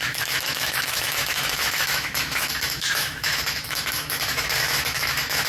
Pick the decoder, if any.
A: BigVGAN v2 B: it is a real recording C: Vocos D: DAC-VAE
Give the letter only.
D